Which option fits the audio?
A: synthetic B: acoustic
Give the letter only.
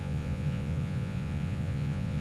A